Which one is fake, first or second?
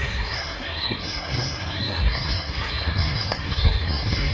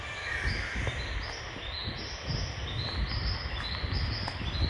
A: first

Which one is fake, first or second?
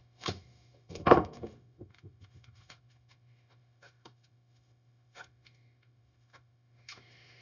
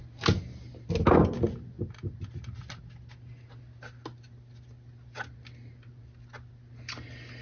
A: first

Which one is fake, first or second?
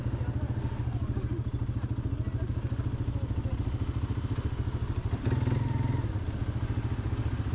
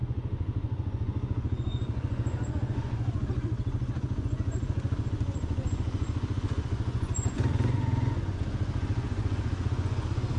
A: second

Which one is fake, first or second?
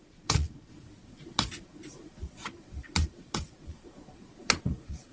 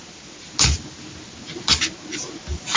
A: first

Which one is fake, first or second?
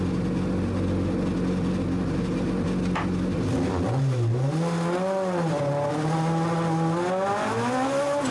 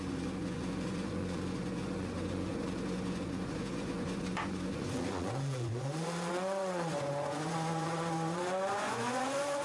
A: second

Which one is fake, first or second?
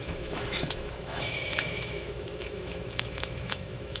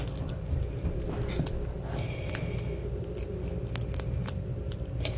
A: first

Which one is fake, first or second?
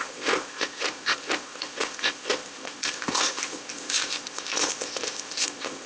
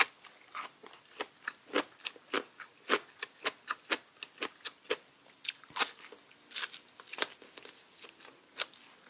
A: first